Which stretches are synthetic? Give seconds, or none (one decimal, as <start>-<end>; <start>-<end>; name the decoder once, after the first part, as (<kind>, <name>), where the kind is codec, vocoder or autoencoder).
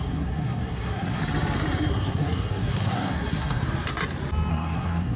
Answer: 0.0-1.2 (codec, SNAC); 1.9-3.6; 4.5-5.2